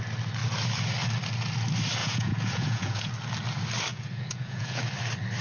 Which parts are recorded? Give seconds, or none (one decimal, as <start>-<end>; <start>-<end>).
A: 0.0-2.0; 3.1-3.9; 4.8-5.4